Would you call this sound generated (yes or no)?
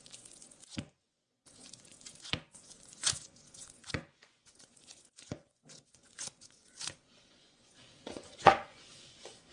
yes